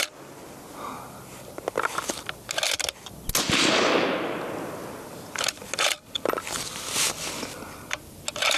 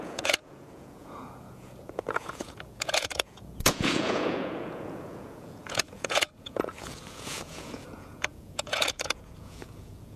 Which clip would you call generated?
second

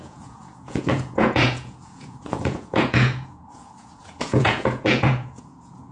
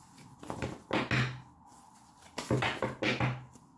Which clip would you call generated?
first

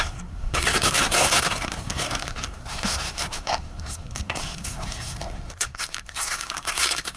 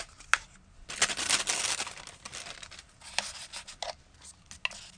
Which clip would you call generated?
first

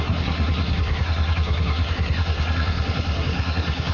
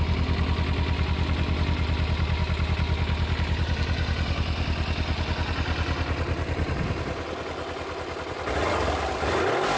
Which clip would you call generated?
first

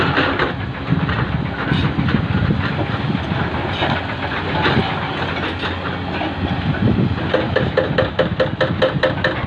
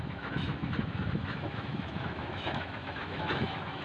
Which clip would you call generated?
second